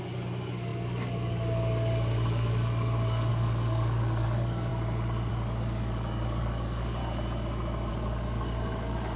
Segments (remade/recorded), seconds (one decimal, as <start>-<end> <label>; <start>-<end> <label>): 0.0-4.7 remade; 4.7-5.3 recorded; 5.3-7.0 remade; 7.0-7.9 recorded; 7.9-9.2 remade